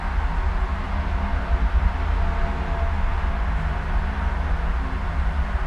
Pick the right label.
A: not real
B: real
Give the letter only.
B